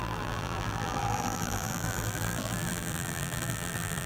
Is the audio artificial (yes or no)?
yes